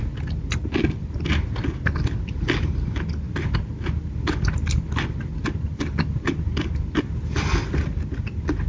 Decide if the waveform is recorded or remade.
recorded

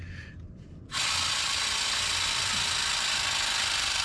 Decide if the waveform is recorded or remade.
recorded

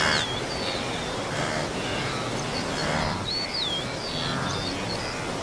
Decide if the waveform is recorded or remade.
recorded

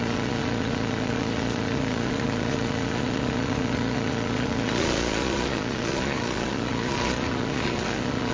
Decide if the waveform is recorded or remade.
remade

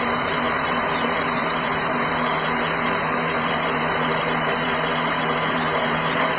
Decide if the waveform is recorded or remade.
remade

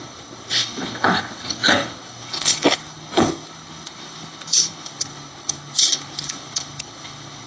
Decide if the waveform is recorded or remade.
remade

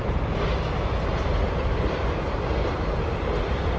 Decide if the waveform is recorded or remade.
recorded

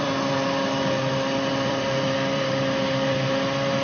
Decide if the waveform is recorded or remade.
remade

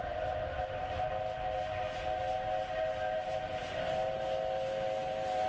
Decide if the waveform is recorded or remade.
recorded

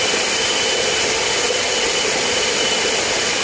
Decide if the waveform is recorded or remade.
recorded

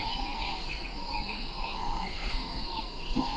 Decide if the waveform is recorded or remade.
remade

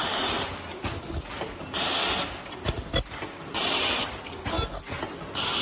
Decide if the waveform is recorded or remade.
recorded